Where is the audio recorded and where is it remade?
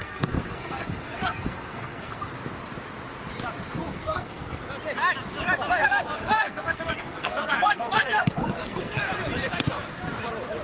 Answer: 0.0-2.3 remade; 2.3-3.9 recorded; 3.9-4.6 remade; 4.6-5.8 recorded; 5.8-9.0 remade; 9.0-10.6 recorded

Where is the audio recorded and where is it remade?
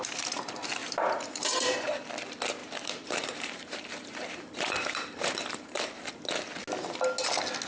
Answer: 0.0-0.8 recorded; 0.8-2.1 remade; 2.1-2.6 recorded; 2.6-6.1 remade; 6.1-7.7 recorded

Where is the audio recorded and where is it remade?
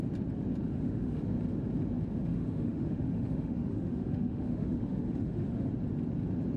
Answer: 0.0-0.6 recorded; 0.6-1.2 remade; 1.2-2.3 recorded; 2.3-5.7 remade; 5.7-6.6 recorded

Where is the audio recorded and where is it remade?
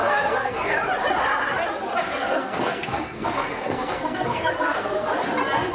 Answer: 0.0-0.7 remade; 0.7-2.1 recorded; 2.1-5.1 remade; 5.1-5.7 recorded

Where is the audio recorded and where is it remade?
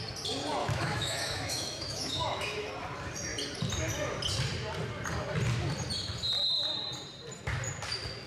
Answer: 0.0-0.6 recorded; 0.6-2.7 remade; 2.7-8.3 recorded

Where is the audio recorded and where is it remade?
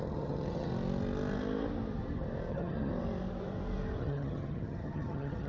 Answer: 0.0-0.7 remade; 0.7-2.5 recorded; 2.5-2.9 remade; 2.9-4.0 recorded; 4.0-5.5 remade